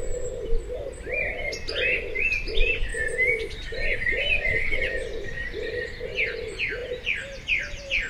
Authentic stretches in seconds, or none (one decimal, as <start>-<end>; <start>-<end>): 0.0-6.8